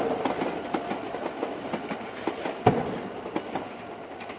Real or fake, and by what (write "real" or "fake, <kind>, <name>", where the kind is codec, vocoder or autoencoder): real